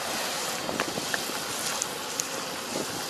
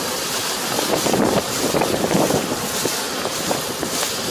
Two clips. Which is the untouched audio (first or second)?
first